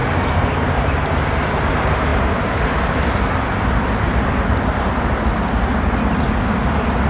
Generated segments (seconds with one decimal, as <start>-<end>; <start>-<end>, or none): 0.0-1.2